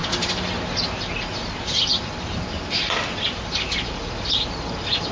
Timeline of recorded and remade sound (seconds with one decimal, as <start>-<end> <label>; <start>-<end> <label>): 0.0-5.1 recorded